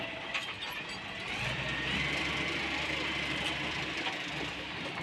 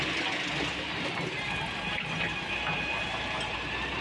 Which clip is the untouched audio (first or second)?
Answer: second